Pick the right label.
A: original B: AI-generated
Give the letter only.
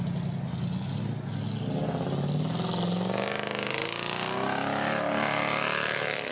A